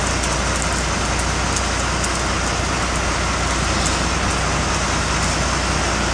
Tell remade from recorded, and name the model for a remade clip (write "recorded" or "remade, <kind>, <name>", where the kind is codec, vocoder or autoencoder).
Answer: recorded